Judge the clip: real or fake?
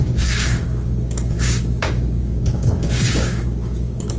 fake